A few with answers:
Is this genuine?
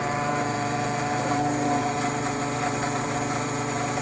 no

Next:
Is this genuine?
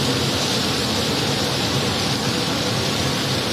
no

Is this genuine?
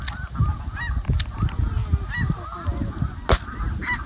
yes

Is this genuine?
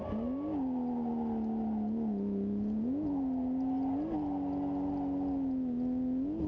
yes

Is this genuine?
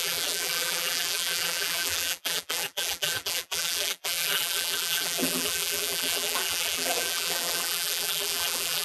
no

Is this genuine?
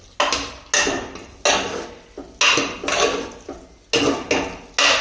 yes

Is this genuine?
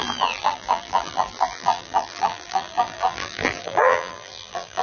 no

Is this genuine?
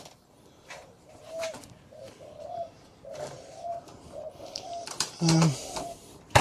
no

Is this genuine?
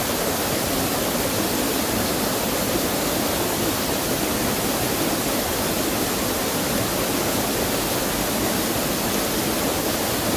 yes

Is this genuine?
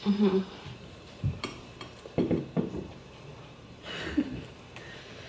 no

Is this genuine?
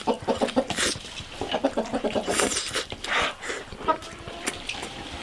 no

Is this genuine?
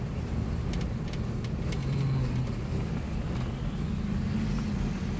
yes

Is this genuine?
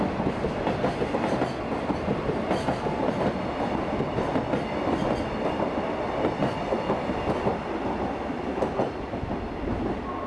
yes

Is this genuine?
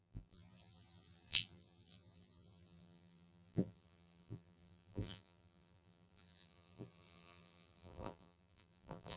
no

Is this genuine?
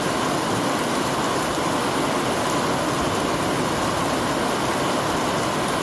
yes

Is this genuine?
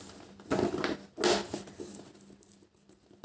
yes